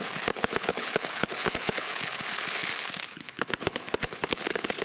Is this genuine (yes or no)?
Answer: no